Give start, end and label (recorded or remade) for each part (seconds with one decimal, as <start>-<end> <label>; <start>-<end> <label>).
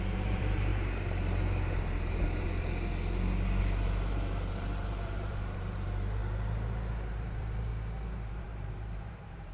0.0-0.7 remade; 0.7-3.6 recorded; 3.6-6.2 remade; 6.2-6.9 recorded; 6.9-7.7 remade; 7.7-8.3 recorded; 8.3-9.5 remade